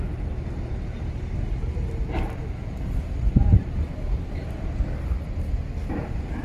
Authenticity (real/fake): real